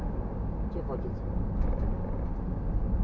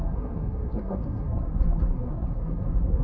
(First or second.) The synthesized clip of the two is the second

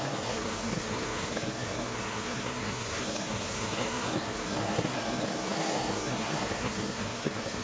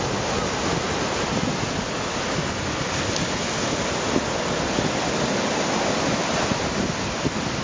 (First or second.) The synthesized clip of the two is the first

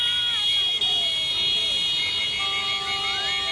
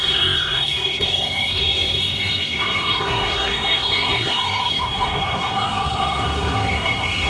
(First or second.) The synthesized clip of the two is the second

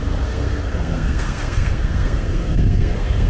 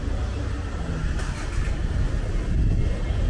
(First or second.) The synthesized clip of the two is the first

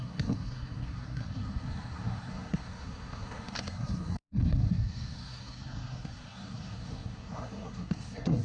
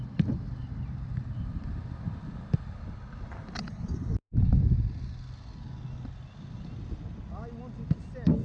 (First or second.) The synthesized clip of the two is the first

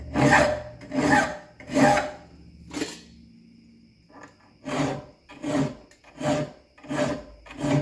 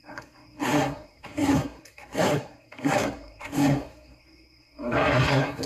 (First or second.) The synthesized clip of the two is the second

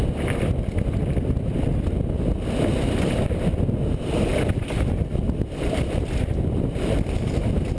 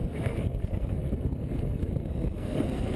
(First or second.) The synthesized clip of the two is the second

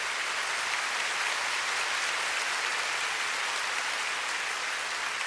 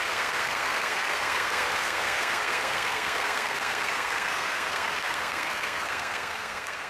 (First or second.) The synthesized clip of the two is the second